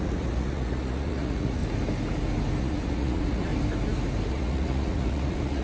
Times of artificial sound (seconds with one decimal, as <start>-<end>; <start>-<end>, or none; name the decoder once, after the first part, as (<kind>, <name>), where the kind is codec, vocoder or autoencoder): 0.0-1.6 (vocoder, Vocos); 2.6-3.5; 4.3-5.6